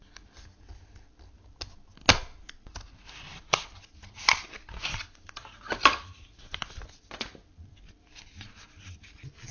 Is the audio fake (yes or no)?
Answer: no